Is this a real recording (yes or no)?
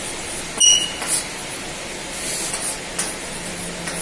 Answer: yes